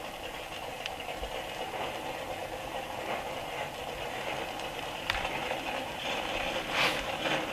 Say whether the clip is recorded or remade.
recorded